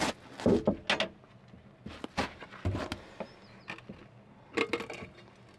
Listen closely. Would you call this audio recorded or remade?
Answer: recorded